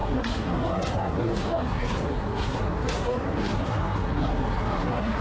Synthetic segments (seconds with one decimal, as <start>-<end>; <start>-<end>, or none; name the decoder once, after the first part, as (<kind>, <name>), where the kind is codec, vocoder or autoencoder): 0.0-5.2 (codec, SNAC)